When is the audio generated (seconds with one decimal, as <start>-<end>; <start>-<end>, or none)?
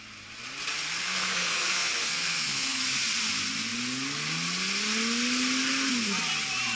1.0-2.8